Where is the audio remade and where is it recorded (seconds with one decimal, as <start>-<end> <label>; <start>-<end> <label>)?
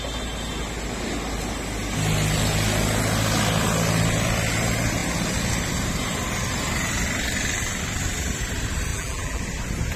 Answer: 0.0-8.9 recorded; 8.9-9.4 remade; 9.4-10.0 recorded